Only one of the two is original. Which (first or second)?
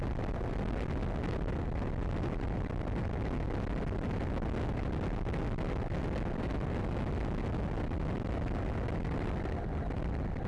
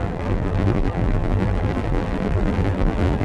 first